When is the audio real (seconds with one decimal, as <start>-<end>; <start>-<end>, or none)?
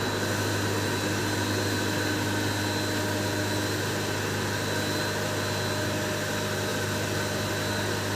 0.0-8.2